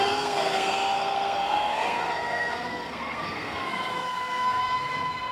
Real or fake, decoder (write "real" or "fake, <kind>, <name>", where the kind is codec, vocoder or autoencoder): fake, codec, SNAC